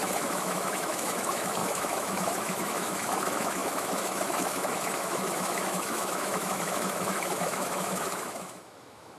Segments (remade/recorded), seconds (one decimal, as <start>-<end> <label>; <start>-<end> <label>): 0.0-9.2 remade